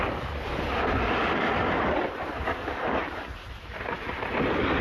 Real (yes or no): yes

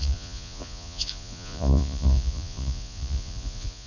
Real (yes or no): no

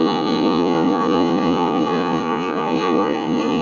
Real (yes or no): no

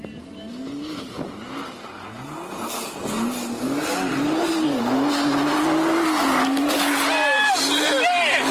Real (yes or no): yes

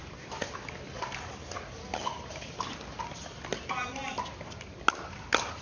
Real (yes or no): yes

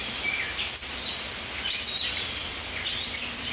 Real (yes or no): yes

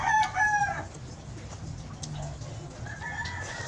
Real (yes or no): yes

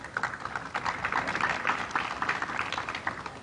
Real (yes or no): yes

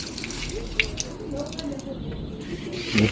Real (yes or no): yes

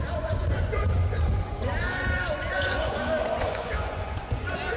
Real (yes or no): no